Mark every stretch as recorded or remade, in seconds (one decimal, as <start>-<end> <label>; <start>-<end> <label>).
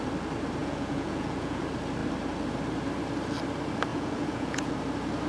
0.0-0.6 recorded; 0.6-1.6 remade; 1.6-3.9 recorded; 3.9-4.7 remade; 4.7-5.3 recorded